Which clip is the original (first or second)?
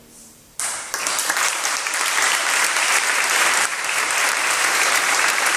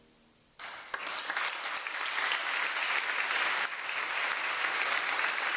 second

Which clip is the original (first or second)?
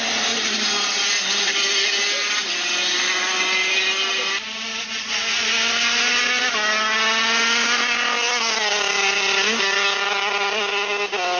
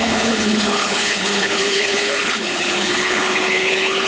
first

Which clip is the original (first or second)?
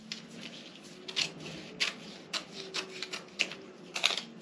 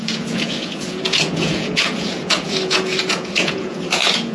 first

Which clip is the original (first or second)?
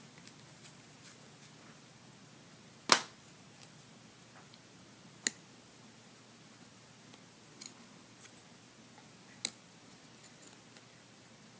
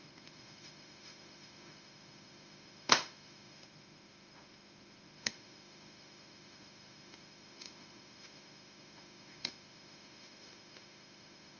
first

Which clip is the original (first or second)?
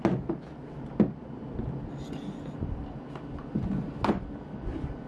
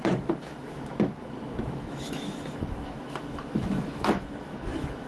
first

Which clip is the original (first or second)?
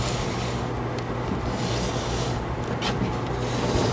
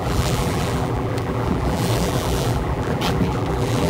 first